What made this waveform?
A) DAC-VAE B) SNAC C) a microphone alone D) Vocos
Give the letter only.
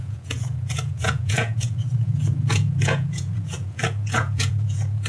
D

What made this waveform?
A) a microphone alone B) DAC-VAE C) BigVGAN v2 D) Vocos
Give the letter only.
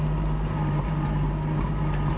A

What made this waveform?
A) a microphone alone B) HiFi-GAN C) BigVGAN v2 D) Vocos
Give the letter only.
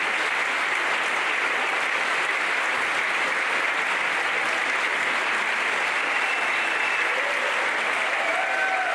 A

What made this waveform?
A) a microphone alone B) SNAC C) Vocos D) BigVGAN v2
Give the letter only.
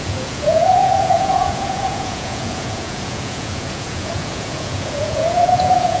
C